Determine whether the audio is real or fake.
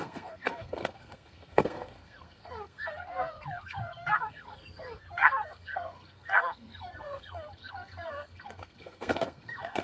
fake